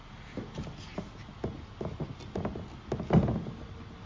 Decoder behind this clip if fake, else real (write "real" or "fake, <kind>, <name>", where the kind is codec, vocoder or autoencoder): real